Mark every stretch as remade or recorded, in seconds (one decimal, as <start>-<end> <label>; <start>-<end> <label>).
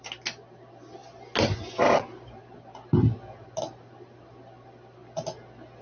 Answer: 0.0-5.8 recorded